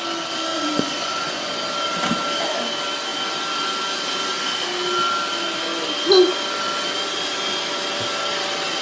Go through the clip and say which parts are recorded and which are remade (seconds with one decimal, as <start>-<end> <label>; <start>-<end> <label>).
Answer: 0.0-0.5 recorded; 0.5-1.5 remade; 1.5-8.8 recorded